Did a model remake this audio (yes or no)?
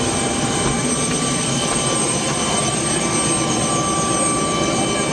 no